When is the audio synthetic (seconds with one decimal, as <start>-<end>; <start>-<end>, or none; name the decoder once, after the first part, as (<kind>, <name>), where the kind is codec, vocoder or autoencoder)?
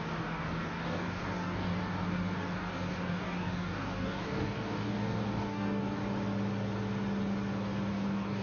0.0-6.0 (codec, DAC); 7.9-8.4